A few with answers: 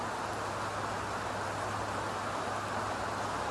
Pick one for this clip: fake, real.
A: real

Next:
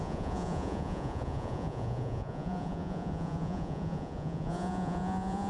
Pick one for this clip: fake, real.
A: fake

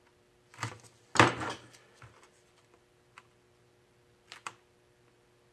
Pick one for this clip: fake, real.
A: fake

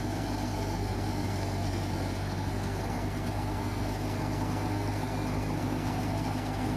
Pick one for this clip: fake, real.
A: fake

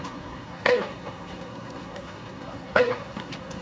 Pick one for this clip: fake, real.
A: fake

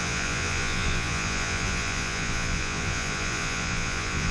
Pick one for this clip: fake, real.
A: fake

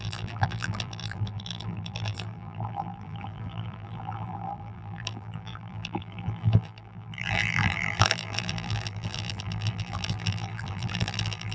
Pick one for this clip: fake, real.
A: fake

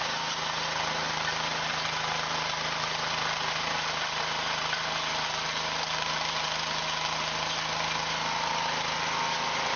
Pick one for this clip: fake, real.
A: real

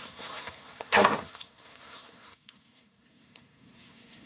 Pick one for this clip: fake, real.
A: fake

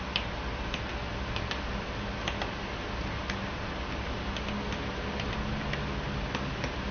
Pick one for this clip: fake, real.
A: real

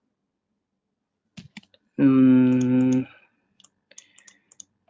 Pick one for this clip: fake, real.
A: real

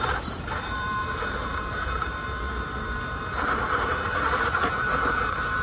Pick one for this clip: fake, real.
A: fake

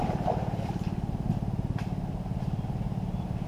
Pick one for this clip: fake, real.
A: real